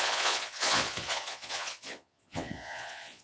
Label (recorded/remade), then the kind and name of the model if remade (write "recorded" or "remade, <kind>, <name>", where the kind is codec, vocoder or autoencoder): remade, vocoder, Vocos